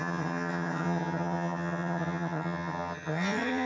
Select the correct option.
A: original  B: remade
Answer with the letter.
B